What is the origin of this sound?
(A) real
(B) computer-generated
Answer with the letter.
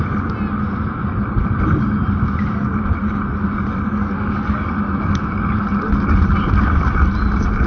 A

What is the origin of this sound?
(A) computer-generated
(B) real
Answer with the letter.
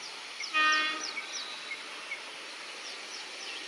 B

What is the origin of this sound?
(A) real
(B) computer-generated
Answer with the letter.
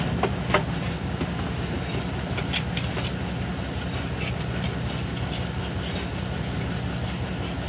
A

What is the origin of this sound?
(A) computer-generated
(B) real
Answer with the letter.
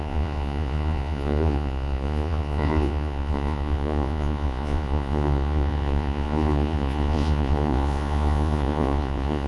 A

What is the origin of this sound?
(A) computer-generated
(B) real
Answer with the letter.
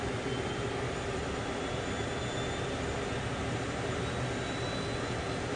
B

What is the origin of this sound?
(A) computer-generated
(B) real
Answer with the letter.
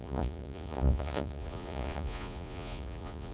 A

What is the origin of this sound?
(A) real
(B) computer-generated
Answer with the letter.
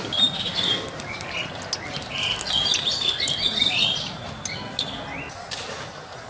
A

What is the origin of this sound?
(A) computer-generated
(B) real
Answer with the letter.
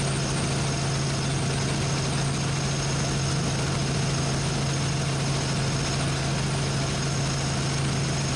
B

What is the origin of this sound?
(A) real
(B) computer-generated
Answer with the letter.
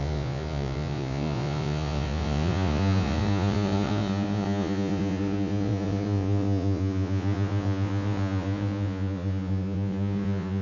B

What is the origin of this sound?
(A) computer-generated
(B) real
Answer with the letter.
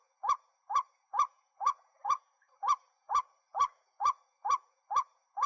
A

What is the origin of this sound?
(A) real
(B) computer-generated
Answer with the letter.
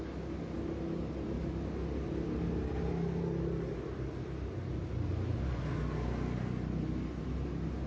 A